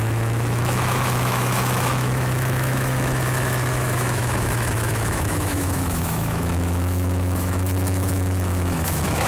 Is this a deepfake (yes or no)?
yes